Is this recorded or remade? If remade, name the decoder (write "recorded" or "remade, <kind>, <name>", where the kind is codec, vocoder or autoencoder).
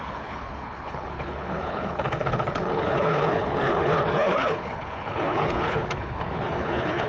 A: remade, codec, HILCodec